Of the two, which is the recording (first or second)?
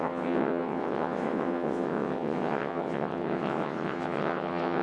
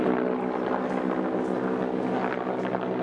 second